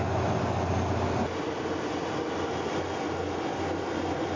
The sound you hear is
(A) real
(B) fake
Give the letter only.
A